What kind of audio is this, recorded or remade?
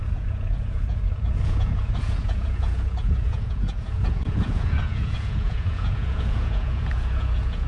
remade